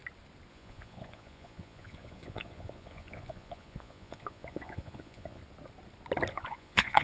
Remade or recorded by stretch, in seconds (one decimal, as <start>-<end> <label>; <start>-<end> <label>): 0.0-0.5 recorded; 0.5-5.4 remade; 5.4-6.3 recorded; 6.3-7.0 remade